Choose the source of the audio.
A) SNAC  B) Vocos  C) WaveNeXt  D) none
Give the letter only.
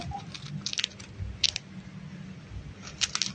D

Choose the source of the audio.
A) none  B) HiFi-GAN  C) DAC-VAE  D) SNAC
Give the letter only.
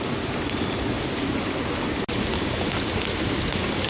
A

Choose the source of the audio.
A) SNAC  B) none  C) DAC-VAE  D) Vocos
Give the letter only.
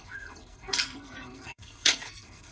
A